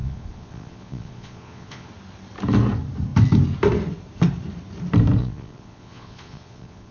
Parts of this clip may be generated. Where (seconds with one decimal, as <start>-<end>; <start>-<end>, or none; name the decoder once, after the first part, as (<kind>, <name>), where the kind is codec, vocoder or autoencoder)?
0.0-1.9 (vocoder, Vocos); 5.2-6.9